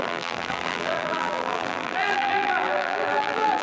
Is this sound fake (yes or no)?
yes